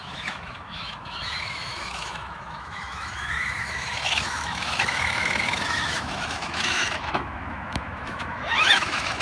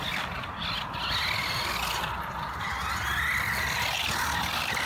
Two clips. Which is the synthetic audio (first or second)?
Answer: first